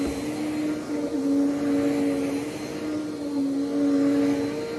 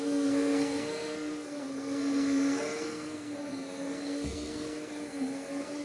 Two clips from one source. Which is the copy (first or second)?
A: second